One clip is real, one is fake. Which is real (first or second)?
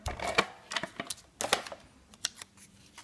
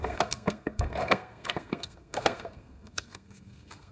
first